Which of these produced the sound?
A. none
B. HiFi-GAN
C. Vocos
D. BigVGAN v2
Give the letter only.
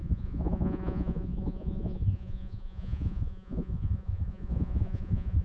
C